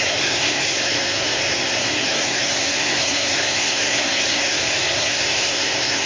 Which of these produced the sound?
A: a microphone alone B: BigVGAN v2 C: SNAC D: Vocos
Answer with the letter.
C